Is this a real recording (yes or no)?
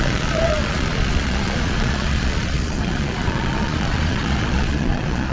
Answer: no